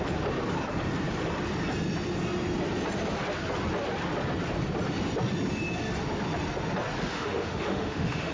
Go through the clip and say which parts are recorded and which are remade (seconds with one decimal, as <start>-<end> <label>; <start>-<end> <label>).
0.0-7.1 recorded; 7.1-8.3 remade